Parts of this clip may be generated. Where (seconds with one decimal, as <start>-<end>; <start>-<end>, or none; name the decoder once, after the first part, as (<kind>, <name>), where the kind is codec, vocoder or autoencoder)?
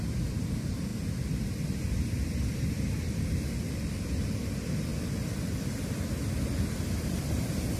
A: 0.0-0.9 (vocoder, BigVGAN v2); 2.6-4.9; 6.7-7.8